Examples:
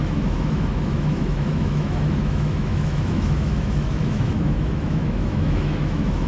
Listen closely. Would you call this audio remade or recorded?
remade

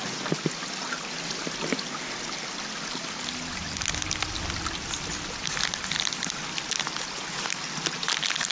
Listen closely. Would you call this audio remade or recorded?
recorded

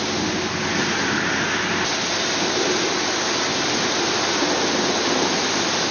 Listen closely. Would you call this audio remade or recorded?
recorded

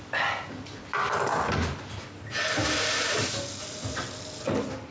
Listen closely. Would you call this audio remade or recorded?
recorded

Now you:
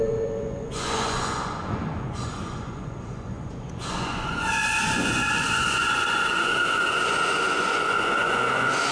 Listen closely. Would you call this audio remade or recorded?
remade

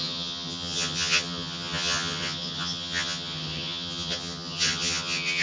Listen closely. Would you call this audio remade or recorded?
remade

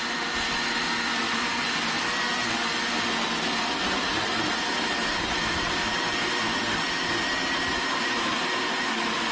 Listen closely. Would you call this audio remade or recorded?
recorded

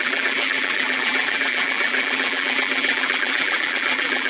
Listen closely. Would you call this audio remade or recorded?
remade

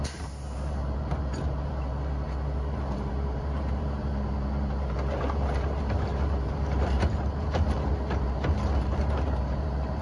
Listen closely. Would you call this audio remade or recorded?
remade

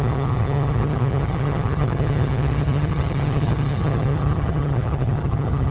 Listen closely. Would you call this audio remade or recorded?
remade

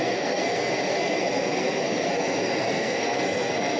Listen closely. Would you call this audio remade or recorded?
remade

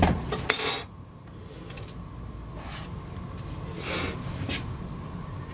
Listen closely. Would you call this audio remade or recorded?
recorded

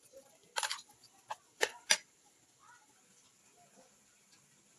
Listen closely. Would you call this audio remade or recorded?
recorded